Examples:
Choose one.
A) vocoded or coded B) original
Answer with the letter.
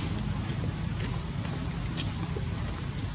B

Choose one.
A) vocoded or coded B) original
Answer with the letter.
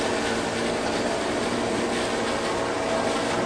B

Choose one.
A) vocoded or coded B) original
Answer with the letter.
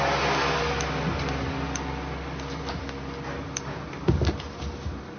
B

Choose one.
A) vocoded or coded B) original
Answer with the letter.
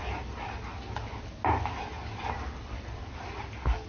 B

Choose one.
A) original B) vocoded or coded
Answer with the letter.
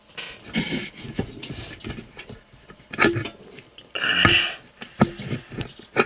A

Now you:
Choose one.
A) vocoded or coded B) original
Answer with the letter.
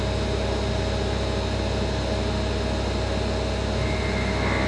B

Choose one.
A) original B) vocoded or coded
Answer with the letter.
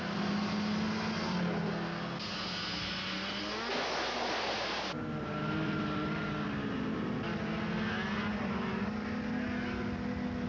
A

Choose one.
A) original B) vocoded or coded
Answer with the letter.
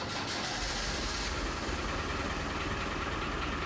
A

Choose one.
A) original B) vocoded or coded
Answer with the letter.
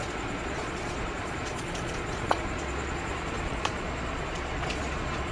B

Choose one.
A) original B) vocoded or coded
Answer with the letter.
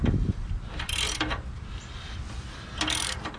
A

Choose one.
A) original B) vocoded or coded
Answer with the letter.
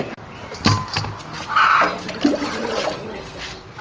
A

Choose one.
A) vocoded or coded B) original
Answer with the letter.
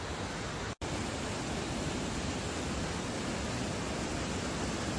B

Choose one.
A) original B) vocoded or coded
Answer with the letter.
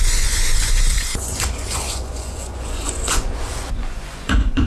B